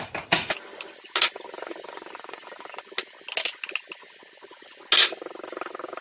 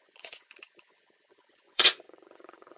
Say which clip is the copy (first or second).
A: second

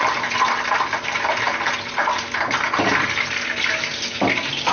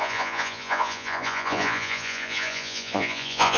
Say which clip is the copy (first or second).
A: second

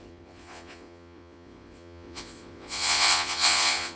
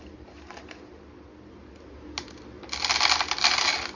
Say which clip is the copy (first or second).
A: first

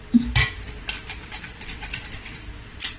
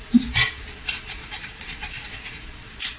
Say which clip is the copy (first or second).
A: second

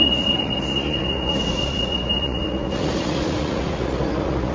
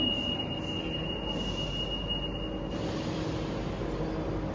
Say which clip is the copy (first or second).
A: first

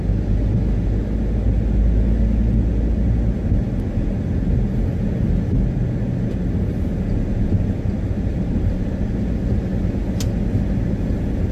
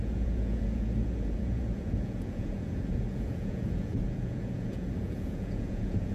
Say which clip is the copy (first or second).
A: second